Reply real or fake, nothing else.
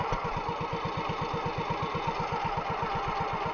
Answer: real